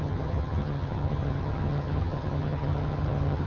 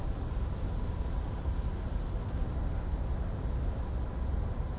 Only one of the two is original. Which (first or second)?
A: second